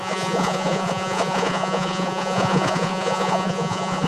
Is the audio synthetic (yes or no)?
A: yes